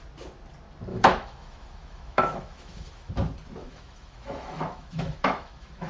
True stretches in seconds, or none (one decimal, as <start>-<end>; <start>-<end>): 0.0-0.9; 3.1-3.6